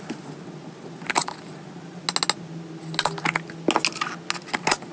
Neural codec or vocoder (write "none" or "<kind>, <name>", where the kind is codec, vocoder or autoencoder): none